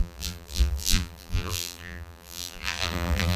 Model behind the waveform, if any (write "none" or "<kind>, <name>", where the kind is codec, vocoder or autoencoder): vocoder, BigVGAN v2